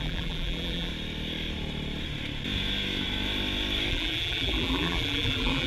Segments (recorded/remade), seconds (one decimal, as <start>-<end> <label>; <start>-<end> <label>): 0.0-0.9 remade; 0.9-3.9 recorded; 3.9-5.7 remade